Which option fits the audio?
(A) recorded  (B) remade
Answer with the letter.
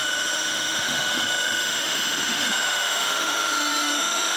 B